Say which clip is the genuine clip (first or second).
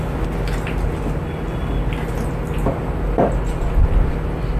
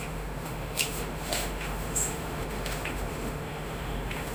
first